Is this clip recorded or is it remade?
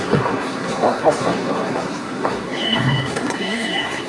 remade